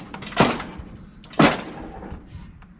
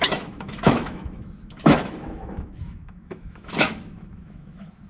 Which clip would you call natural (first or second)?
first